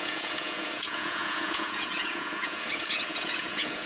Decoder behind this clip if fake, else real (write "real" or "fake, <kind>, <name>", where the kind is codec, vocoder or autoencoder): fake, vocoder, Vocos